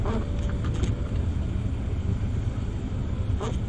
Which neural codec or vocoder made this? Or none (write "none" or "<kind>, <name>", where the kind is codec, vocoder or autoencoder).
none